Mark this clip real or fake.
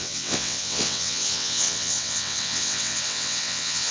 fake